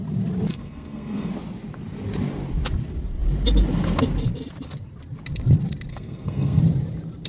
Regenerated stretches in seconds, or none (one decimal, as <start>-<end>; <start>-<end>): 0.5-1.3; 5.9-6.6